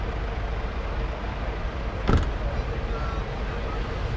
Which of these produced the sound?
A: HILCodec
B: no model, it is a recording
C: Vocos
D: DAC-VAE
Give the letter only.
B